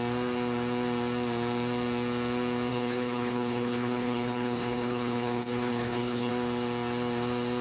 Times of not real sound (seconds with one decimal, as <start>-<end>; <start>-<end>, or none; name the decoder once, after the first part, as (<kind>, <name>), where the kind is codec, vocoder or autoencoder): 2.7-6.3 (codec, HILCodec)